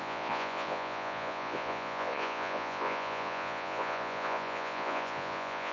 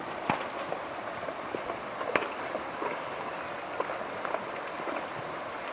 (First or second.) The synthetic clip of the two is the first